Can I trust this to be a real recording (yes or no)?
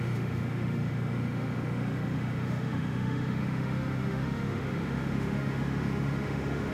no